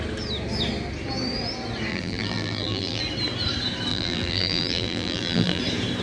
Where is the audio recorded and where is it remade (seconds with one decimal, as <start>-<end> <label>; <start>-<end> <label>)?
0.0-1.9 recorded; 1.9-3.0 remade; 3.0-3.9 recorded; 3.9-5.6 remade; 5.6-6.0 recorded